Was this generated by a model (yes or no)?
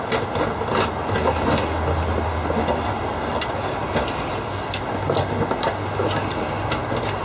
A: no